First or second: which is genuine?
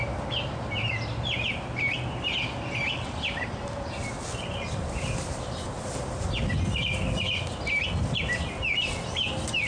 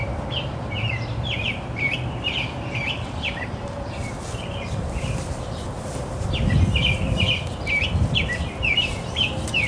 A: first